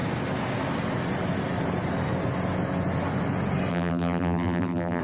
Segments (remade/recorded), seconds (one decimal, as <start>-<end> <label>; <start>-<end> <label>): 0.0-3.7 recorded; 3.7-5.0 remade